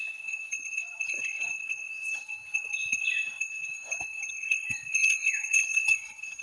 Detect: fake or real fake